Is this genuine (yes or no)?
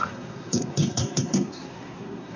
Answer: no